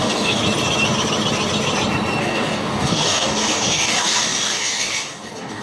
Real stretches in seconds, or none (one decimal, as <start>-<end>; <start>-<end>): 0.4-2.2